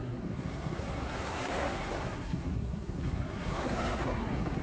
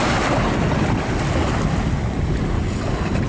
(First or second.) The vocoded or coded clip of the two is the first